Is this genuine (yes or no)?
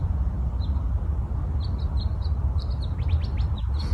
yes